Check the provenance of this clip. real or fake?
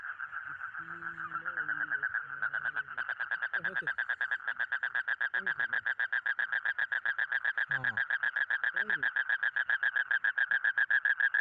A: real